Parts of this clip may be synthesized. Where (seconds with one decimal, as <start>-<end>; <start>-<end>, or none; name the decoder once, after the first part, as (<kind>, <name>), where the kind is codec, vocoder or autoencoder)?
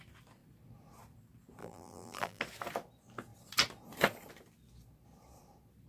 1.6-2.4 (vocoder, BigVGAN v2)